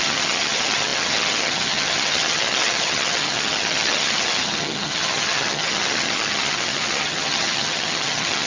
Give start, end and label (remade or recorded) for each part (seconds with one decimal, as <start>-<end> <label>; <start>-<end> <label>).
0.0-8.5 remade